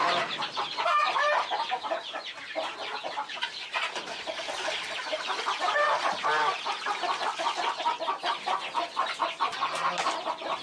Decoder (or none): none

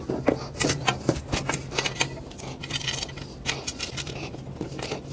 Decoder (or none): none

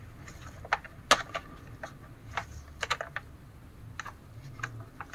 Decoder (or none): none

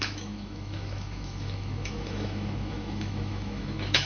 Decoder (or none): autoencoder, DAC-VAE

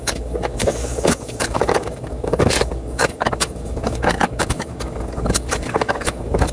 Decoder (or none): codec, DAC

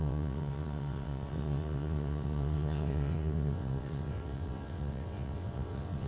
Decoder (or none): vocoder, WaveNeXt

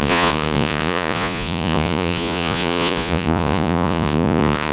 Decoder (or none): vocoder, Vocos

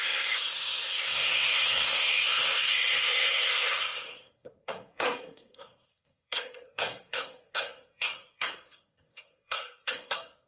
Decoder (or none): codec, SNAC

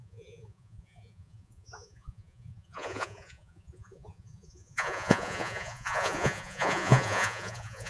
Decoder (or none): vocoder, Vocos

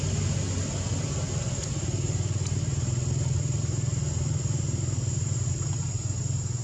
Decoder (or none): none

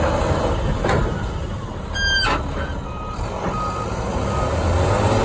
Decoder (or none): none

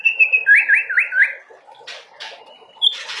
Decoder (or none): none